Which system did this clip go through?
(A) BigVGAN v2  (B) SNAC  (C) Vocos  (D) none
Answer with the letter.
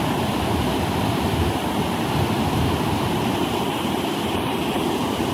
D